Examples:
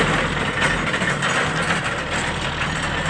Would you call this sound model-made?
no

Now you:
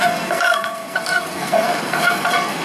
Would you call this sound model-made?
yes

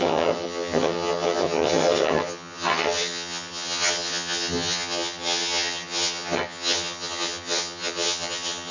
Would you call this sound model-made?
yes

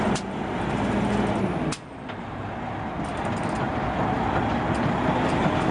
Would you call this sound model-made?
no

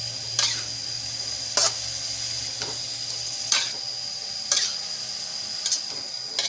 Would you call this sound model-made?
no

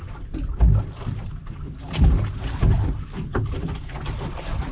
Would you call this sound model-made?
no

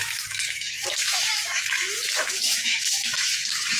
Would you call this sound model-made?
yes